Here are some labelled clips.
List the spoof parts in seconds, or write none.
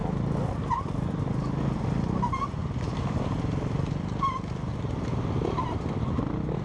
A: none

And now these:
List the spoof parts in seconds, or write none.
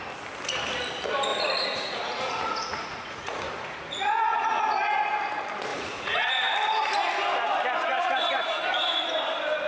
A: 1.3-4.6 (vocoder, Vocos); 5.7-6.3; 7.9-9.1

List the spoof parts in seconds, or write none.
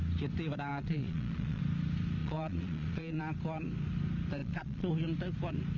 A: 0.7-1.6 (vocoder, Vocos); 2.2-3.2; 4.4-4.9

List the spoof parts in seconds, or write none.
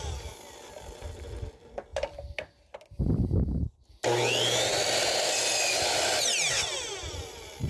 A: none